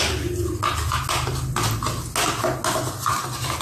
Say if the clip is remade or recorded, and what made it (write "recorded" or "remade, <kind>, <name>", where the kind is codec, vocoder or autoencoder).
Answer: recorded